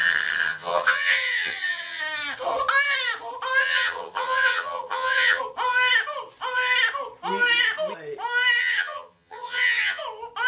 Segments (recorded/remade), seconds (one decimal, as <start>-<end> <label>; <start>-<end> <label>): 0.0-2.0 remade; 2.0-3.6 recorded; 3.6-5.4 remade; 5.4-8.6 recorded; 8.6-10.0 remade; 10.0-10.5 recorded